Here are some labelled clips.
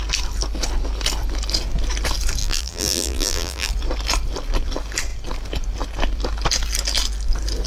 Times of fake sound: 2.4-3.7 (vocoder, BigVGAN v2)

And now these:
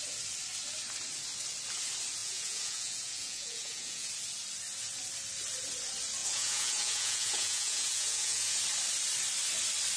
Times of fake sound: 2.2-4.1 (vocoder, Vocos); 6.2-8.6

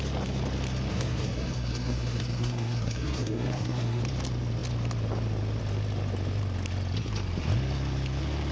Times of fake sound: 0.9-4.0 (codec, SNAC)

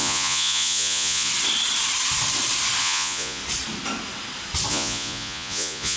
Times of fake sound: 0.0-1.3 (vocoder, Vocos); 2.8-3.4; 4.7-6.0

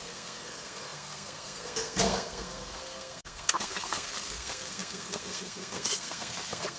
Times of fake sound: 0.0-6.8 (codec, SNAC)

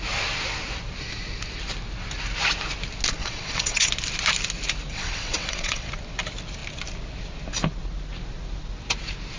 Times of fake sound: 3.2-3.9 (vocoder, WaveNeXt); 4.9-5.9

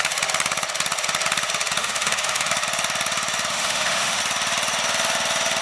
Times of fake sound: 1.8-2.5 (autoencoder, DAC-VAE); 3.5-4.2

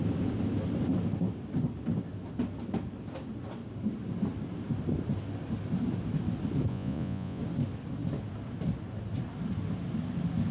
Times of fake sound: 6.7-7.4 (vocoder, Vocos)